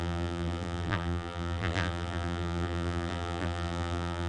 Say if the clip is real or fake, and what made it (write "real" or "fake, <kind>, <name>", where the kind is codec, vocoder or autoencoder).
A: fake, vocoder, BigVGAN v2